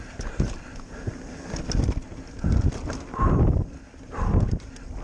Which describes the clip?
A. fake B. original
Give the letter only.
B